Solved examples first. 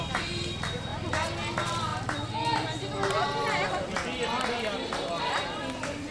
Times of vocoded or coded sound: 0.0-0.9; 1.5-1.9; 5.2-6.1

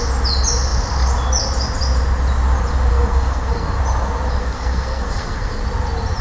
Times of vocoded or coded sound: 2.9-3.8; 4.4-5.6

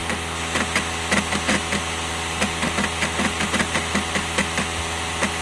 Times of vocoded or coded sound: 2.1-5.4

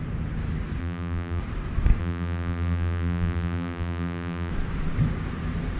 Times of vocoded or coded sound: 0.8-1.4; 2.0-4.5

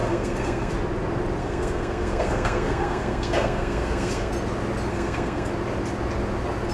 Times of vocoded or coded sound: 0.0-0.7; 1.4-4.3; 4.9-5.5

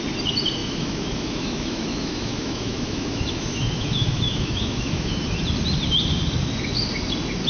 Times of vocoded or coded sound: 0.6-5.1

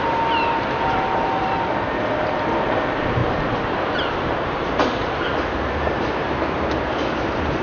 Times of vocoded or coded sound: 0.0-7.6

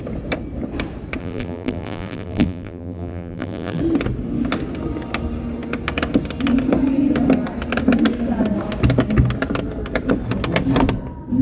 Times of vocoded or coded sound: 1.2-3.8